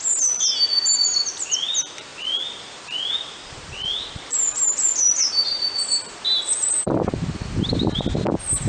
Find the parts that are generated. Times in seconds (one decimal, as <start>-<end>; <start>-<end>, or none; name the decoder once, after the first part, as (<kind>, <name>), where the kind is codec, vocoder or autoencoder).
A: 2.1-6.7 (vocoder, BigVGAN v2)